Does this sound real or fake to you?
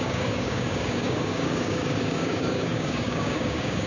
fake